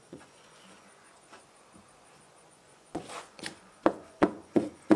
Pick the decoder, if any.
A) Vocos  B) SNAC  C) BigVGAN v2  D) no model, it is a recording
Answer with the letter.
A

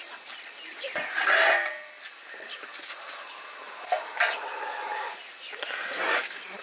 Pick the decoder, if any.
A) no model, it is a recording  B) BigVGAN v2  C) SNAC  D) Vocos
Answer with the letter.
A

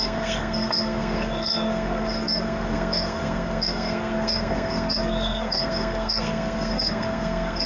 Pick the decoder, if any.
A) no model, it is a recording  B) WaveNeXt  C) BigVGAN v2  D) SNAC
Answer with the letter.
D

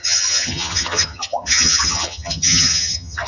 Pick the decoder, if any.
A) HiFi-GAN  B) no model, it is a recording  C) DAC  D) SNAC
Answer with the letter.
A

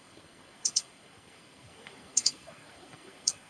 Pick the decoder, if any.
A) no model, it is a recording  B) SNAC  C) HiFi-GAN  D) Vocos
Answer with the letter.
B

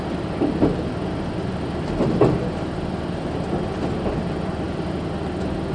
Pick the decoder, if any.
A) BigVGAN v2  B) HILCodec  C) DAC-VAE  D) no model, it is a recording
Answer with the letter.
D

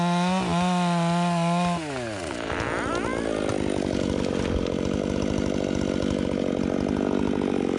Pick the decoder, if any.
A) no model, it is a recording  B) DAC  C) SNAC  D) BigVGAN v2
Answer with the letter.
A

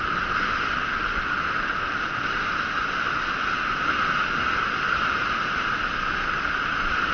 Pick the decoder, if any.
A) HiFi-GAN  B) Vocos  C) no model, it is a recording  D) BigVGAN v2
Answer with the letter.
C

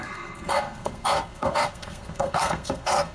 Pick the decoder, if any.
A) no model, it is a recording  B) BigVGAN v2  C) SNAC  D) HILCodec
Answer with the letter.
C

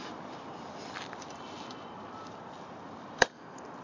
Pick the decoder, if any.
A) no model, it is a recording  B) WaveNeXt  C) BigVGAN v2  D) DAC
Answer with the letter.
C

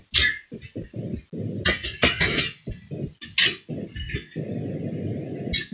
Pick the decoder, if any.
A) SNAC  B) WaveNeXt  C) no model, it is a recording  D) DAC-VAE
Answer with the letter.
C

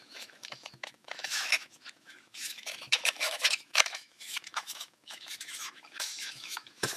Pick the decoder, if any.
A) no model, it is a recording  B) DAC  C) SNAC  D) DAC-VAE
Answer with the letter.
D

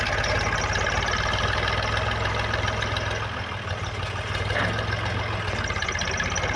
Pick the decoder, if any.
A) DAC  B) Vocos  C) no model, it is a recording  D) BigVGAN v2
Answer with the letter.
C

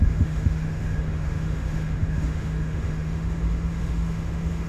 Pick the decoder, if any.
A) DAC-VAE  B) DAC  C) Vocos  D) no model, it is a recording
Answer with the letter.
A